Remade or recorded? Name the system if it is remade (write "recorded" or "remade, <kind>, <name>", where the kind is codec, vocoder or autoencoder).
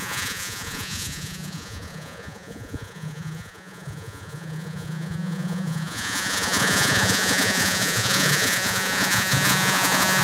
remade, vocoder, Vocos